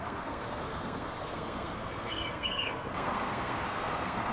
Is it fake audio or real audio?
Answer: fake